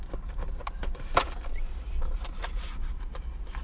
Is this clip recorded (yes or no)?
yes